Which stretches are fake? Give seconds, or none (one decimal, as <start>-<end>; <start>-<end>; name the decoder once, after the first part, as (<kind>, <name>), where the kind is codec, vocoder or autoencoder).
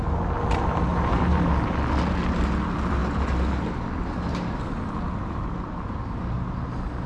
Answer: 0.9-1.5 (vocoder, BigVGAN v2)